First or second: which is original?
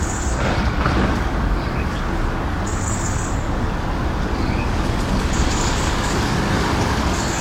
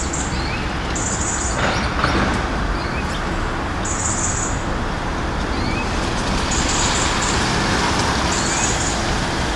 second